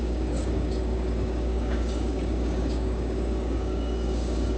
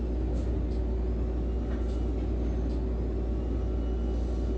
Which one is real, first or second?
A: second